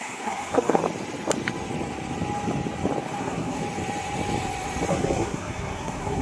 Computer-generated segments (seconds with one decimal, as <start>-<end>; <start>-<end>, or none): 0.0-0.8; 3.2-3.6; 4.9-6.2